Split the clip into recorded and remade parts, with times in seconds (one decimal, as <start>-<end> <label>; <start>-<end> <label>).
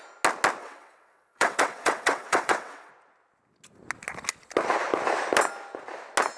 0.0-0.6 recorded; 0.6-2.9 remade; 2.9-6.4 recorded